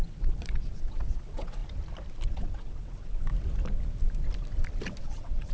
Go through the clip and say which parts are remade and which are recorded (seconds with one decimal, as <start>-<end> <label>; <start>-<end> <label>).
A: 0.0-1.6 remade; 1.6-2.3 recorded; 2.3-3.3 remade; 3.3-5.0 recorded; 5.0-5.5 remade